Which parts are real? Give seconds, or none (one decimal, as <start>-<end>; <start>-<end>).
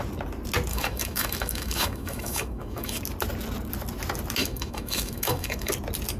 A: 0.0-0.7; 3.0-4.4; 5.7-6.2